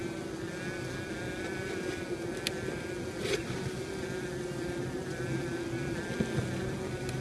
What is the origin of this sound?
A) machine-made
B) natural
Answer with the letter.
B